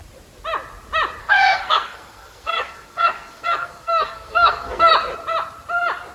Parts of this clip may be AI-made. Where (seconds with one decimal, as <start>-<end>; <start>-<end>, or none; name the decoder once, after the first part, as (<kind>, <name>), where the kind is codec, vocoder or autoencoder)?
1.2-4.9 (codec, SNAC)